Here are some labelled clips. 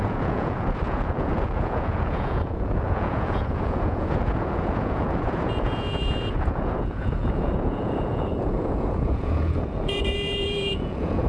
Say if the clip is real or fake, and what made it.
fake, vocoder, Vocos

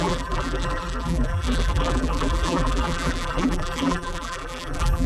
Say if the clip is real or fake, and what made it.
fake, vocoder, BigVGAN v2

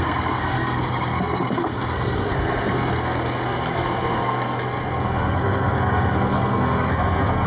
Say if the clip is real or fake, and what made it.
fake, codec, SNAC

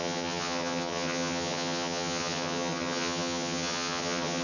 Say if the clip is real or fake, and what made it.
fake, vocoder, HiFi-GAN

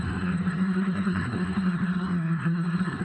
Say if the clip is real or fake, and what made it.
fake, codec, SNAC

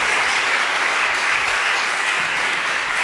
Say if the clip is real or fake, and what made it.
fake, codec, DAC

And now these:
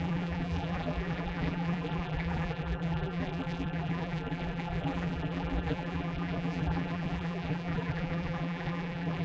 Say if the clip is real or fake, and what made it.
fake, vocoder, BigVGAN v2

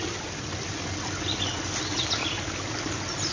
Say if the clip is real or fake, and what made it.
real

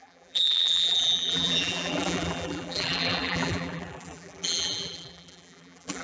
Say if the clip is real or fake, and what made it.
fake, vocoder, BigVGAN v2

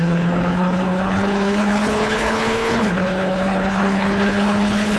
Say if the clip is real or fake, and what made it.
fake, codec, HILCodec